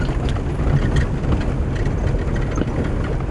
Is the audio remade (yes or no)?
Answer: no